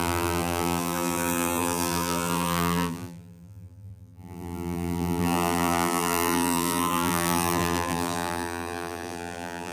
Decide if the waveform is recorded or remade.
remade